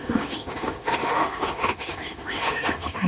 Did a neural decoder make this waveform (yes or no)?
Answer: yes